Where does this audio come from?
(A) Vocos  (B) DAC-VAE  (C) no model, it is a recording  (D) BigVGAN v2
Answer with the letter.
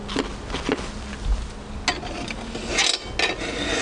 C